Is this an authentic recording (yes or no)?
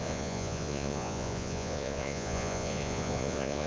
no